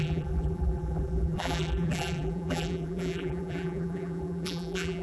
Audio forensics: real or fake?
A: fake